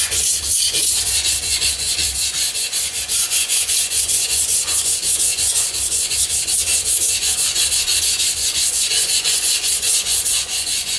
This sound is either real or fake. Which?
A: fake